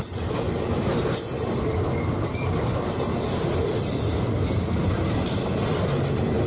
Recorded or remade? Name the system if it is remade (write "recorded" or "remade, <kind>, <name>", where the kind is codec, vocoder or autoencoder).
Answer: recorded